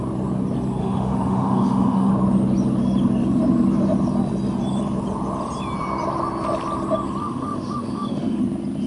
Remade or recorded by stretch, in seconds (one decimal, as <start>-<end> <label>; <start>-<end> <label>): 0.0-0.8 recorded; 0.8-2.1 remade; 2.1-7.2 recorded; 7.2-8.4 remade; 8.4-8.9 recorded